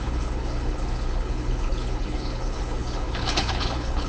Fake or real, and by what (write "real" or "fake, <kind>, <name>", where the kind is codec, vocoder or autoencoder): fake, codec, HILCodec